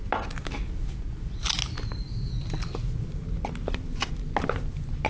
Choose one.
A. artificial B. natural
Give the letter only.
B